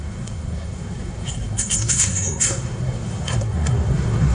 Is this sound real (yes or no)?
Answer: no